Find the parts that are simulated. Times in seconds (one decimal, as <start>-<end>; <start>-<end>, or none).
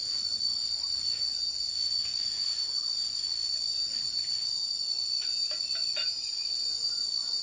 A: none